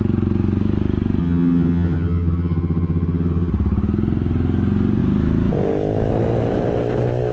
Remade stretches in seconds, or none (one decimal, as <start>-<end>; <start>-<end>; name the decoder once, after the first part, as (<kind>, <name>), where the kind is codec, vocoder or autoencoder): 1.2-3.5 (vocoder, HiFi-GAN)